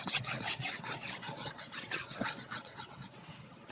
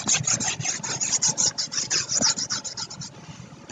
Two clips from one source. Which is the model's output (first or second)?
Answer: first